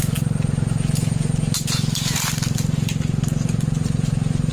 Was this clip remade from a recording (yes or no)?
no